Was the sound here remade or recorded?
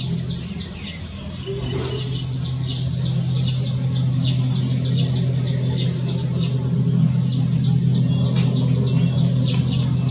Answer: recorded